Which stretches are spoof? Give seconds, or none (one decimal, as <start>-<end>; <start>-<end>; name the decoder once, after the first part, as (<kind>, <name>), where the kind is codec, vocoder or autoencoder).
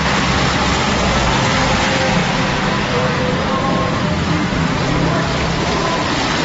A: none